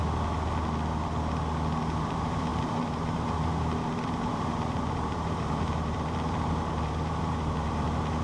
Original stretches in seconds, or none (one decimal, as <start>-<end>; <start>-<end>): 0.0-2.1

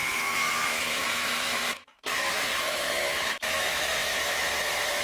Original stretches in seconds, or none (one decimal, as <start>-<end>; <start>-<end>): none

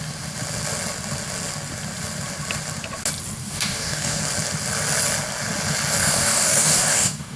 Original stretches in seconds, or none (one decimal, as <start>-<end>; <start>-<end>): 0.0-3.4; 4.2-6.0

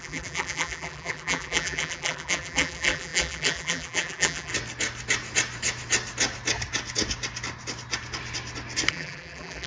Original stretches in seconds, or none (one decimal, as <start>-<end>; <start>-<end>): 4.5-8.9

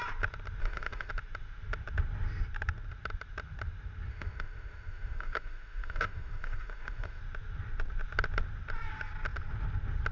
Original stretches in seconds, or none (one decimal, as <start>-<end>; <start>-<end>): 0.0-0.6; 1.1-4.1; 7.2-10.1

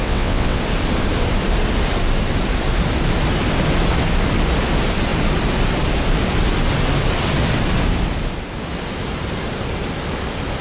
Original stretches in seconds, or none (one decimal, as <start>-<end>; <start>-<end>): 0.6-10.6

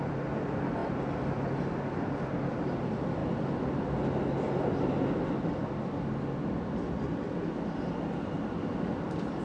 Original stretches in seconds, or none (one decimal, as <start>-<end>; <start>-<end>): 0.0-9.4